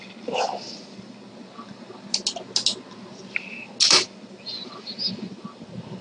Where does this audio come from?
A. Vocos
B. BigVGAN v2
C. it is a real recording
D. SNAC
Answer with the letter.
C